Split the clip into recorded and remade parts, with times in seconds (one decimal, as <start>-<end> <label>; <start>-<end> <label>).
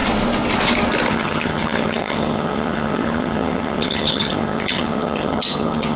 0.0-1.1 recorded; 1.1-6.0 remade